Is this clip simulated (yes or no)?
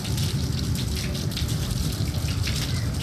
yes